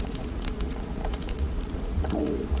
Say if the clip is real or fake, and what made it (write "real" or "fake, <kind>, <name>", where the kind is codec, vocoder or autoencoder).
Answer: fake, vocoder, Vocos